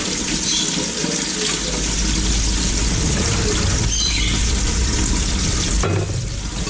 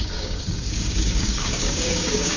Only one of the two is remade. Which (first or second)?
second